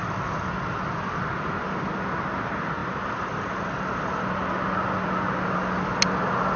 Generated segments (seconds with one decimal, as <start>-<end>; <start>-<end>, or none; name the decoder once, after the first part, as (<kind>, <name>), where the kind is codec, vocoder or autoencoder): none